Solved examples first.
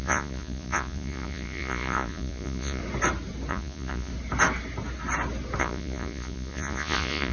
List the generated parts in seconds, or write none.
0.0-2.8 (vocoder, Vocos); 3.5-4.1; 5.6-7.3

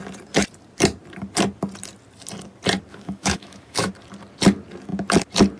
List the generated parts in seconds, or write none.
2.9-3.9 (autoencoder, DAC-VAE)